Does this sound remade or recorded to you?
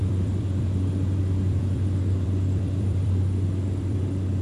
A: remade